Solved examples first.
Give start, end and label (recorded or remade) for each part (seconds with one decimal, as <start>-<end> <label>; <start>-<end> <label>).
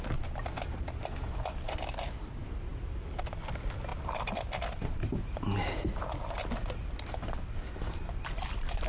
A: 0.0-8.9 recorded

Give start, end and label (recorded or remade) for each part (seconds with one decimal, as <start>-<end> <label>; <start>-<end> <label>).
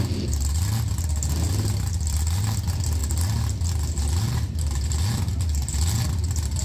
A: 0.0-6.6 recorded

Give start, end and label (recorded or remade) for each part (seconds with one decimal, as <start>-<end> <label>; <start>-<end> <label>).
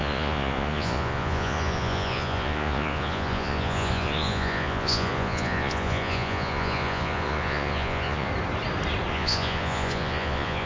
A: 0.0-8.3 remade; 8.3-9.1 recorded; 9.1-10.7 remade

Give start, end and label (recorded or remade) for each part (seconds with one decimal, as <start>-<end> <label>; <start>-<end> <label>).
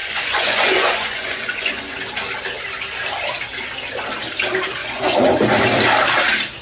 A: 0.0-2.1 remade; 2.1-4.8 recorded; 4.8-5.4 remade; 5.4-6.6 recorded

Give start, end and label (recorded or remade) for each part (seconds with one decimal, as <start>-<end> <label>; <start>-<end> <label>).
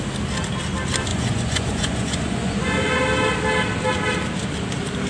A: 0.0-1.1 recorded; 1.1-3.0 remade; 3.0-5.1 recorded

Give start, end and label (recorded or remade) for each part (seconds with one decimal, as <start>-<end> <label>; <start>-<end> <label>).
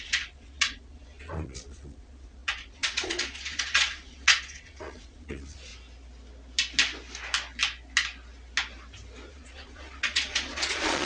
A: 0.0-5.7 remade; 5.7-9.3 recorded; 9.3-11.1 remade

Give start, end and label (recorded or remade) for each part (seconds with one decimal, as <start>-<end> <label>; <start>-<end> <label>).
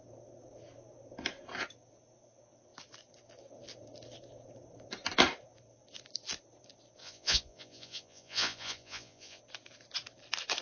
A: 0.0-7.0 recorded; 7.0-9.4 remade; 9.4-10.6 recorded